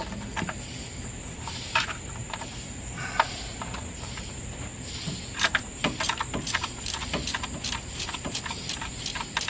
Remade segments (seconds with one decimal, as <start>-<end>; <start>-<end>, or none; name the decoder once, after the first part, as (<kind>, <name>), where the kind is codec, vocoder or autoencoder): 0.0-4.7 (vocoder, BigVGAN v2); 5.6-7.2; 7.9-9.5